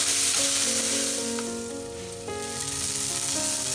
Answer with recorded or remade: recorded